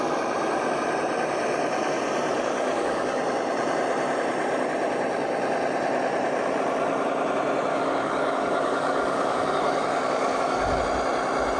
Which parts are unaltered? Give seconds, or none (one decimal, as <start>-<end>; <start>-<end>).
0.0-2.3; 3.2-7.7; 10.8-11.6